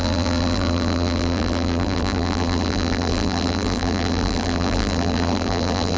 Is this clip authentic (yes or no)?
no